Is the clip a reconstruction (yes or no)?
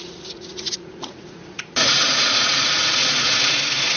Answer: yes